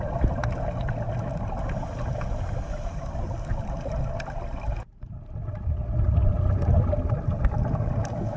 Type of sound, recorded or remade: recorded